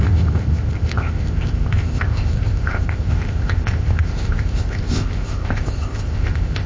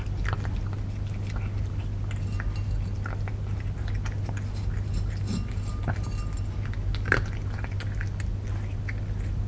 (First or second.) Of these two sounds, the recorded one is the second